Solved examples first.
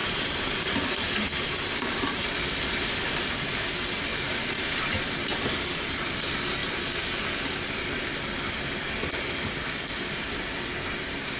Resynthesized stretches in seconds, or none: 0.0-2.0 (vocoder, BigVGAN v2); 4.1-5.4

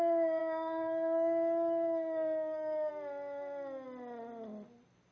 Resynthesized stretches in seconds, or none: 0.4-2.9 (codec, DAC)

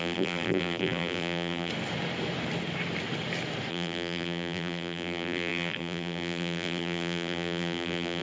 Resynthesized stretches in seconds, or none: 0.0-1.7 (vocoder, BigVGAN v2); 3.7-8.2

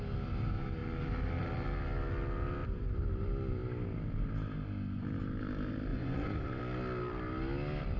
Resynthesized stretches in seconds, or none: 5.9-6.6 (vocoder, Vocos)

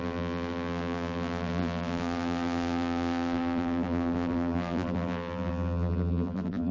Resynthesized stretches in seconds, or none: 0.0-6.7 (vocoder, BigVGAN v2)

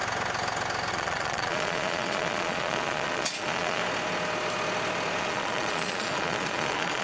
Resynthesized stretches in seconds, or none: 0.9-3.8 (vocoder, Vocos); 5.2-7.0

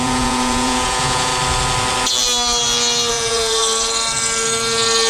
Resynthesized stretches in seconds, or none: 0.0-1.3 (vocoder, Vocos); 3.1-3.6